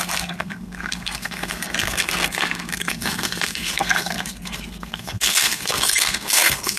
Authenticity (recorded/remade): remade